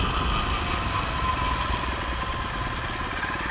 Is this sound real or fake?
real